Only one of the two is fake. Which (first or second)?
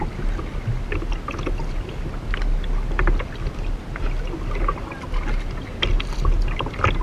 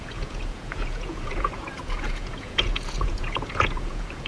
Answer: second